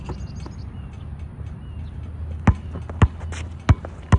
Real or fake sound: real